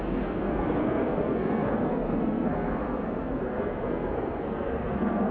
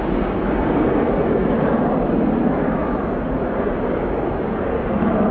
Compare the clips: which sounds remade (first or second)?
first